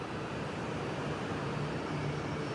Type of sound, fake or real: real